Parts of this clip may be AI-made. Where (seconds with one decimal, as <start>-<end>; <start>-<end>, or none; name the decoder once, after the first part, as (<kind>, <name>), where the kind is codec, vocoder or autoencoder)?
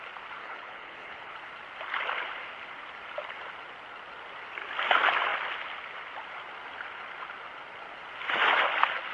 0.4-1.3 (codec, HILCodec)